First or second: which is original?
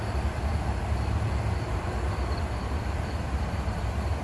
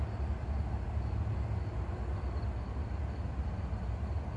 second